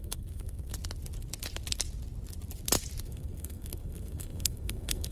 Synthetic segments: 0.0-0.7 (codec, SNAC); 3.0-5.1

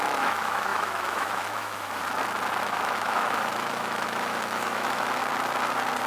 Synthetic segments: 0.0-2.0 (autoencoder, DAC-VAE); 2.6-5.2

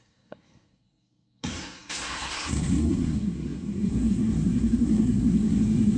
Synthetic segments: 0.0-6.0 (codec, SNAC)

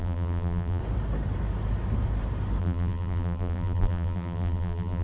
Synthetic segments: 0.0-0.8 (vocoder, BigVGAN v2); 2.6-5.0

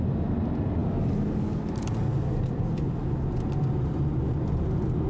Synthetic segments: none

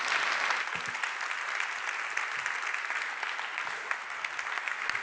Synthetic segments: none